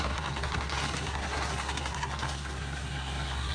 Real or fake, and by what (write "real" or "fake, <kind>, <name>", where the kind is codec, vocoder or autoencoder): fake, codec, SNAC